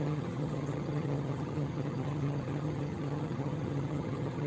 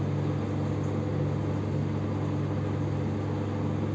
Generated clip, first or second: first